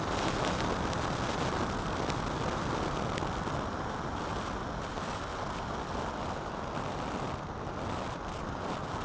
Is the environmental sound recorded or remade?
recorded